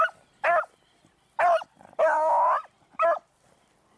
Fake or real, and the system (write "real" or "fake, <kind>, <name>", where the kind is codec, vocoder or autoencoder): real